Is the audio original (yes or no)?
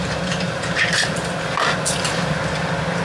yes